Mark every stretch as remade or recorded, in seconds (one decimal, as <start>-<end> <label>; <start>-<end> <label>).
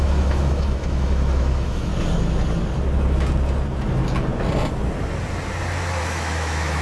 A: 0.0-1.9 remade; 1.9-6.0 recorded; 6.0-6.8 remade